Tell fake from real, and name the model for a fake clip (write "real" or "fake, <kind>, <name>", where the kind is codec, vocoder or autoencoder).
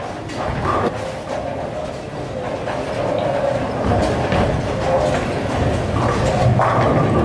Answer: real